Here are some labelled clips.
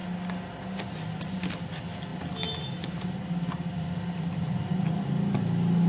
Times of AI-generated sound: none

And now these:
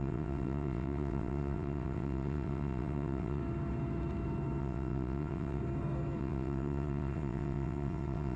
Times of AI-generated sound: 0.0-3.4 (vocoder, WaveNeXt); 4.6-5.6; 6.2-8.4

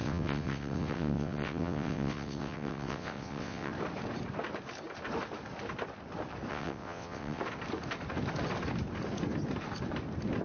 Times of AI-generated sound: 0.0-3.7 (vocoder, WaveNeXt); 6.5-7.4